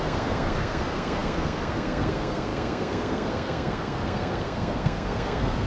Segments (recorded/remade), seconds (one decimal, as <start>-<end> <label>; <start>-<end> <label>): 0.0-5.7 remade